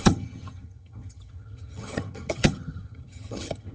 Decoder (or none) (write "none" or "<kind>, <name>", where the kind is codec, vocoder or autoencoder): vocoder, HiFi-GAN